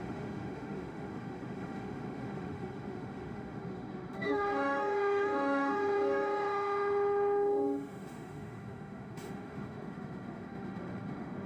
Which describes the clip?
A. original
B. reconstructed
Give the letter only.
B